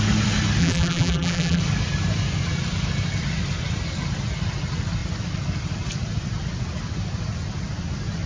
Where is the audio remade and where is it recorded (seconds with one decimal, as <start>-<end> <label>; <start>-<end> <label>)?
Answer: 0.0-0.6 recorded; 0.6-1.6 remade; 1.6-8.3 recorded